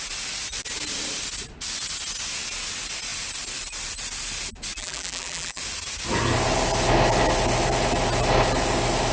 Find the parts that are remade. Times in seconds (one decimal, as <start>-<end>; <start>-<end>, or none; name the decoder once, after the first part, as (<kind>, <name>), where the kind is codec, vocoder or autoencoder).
4.8-5.6 (vocoder, BigVGAN v2)